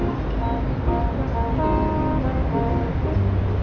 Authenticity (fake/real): real